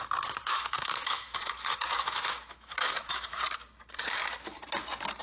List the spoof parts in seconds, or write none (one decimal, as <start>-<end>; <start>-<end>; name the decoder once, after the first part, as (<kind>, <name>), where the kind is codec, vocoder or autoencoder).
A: 0.5-3.4 (autoencoder, DAC-VAE)